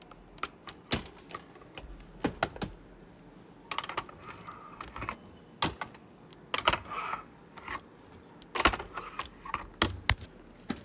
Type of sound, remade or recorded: recorded